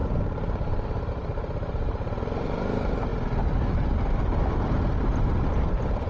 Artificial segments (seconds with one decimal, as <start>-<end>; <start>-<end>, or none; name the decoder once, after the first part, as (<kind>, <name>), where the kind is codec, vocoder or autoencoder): 0.0-6.1 (vocoder, BigVGAN v2)